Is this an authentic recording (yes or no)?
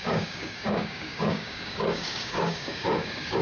no